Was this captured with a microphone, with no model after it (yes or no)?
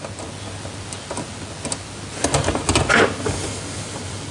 yes